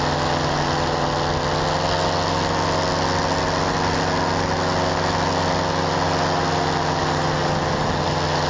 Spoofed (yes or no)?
no